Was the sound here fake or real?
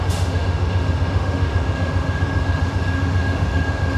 fake